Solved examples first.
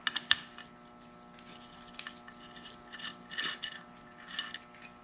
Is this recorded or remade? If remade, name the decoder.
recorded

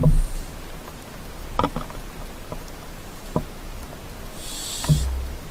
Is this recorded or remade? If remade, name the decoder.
recorded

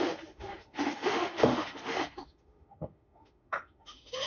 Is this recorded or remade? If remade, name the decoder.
remade, autoencoder, DAC-VAE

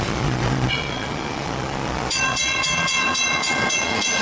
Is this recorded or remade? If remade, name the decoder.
remade, vocoder, Vocos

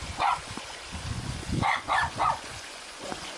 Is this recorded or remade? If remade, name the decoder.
remade, vocoder, Vocos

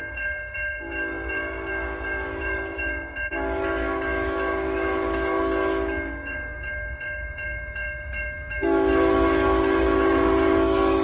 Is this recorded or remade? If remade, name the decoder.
remade, codec, DAC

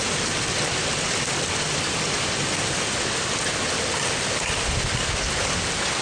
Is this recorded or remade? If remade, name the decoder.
recorded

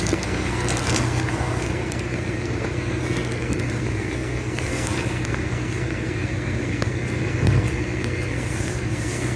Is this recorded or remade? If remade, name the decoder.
remade, codec, SNAC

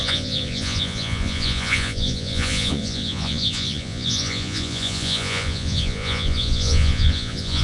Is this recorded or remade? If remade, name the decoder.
remade, vocoder, Vocos